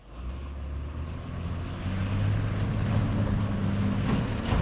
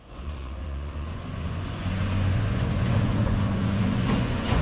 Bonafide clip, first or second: first